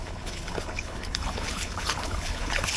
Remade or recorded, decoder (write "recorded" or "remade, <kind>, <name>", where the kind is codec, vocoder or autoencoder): remade, codec, HILCodec